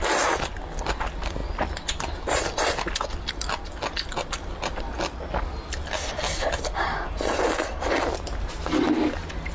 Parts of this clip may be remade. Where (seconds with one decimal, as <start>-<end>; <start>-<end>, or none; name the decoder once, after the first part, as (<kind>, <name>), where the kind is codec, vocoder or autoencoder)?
none